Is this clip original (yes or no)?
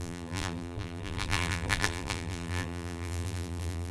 no